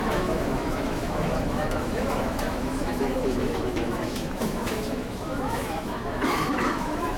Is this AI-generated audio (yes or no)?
yes